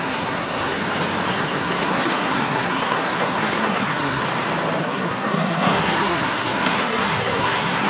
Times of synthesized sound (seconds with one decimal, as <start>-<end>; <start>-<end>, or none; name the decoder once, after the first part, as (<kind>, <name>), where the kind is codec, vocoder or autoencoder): 0.0-0.8 (codec, SNAC); 1.3-4.2; 4.8-7.9